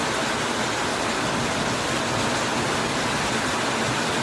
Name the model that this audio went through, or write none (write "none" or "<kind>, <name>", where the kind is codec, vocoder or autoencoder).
none